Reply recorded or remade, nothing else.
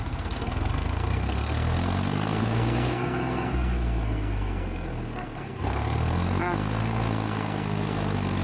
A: remade